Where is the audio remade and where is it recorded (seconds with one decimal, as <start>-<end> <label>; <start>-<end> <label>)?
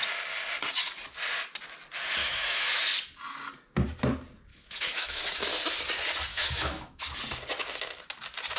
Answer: 0.0-2.2 recorded; 2.2-2.8 remade; 2.8-4.5 recorded; 4.5-5.2 remade; 5.2-6.3 recorded; 6.3-7.0 remade; 7.0-8.6 recorded